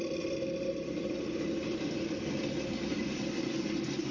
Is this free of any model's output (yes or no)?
yes